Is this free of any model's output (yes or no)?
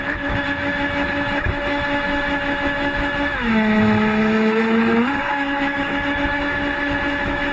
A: no